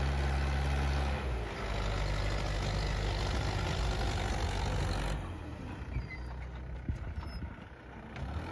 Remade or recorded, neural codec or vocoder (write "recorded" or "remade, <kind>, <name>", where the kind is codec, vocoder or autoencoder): recorded